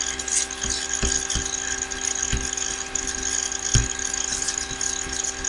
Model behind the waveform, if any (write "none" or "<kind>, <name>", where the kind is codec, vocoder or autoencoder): none